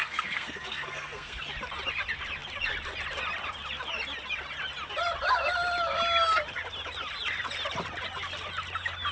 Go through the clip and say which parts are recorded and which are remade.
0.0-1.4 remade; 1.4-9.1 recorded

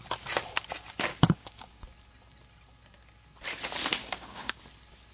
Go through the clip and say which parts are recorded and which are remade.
0.0-1.1 recorded; 1.1-1.8 remade; 1.8-4.0 recorded; 4.0-4.6 remade; 4.6-5.1 recorded

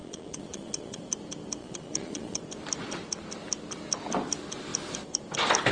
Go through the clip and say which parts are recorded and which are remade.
0.0-1.0 remade; 1.0-1.6 recorded; 1.6-2.4 remade; 2.4-5.7 recorded